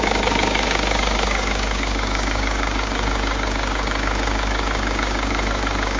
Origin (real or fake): fake